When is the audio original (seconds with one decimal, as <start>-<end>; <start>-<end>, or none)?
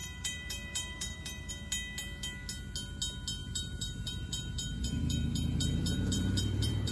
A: 1.5-3.4